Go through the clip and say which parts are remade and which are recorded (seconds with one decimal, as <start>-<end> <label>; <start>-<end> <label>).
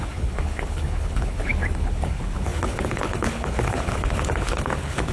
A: 0.0-5.1 remade